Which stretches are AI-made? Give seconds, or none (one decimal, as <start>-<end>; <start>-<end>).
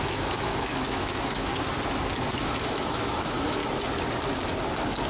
0.0-1.5; 2.3-3.6